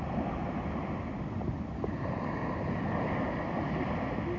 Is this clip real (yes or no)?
yes